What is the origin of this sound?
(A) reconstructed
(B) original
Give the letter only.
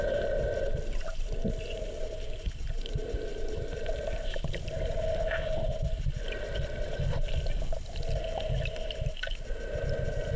B